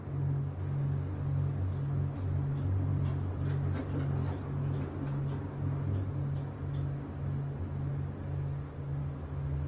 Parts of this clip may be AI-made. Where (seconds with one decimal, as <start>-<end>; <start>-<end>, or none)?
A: 2.9-3.4